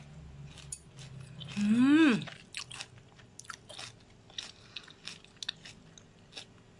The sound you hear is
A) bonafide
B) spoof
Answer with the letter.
A